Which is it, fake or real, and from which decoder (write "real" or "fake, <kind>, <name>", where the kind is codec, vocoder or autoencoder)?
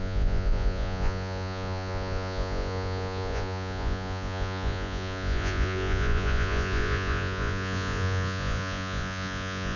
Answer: fake, vocoder, Vocos